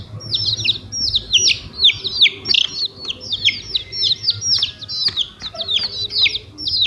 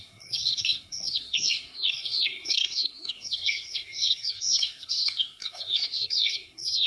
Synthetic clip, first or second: second